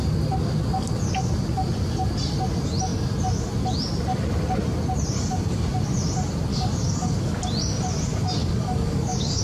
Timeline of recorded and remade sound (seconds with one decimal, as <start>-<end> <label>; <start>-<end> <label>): 0.0-6.5 recorded; 6.5-7.4 remade; 7.4-8.4 recorded; 8.4-9.4 remade